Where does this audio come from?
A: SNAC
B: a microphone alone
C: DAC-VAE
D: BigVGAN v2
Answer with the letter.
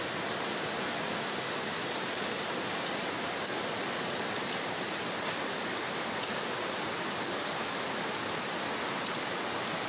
B